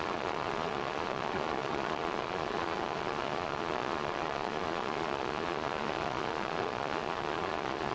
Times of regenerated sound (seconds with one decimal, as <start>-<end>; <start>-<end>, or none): 0.0-7.9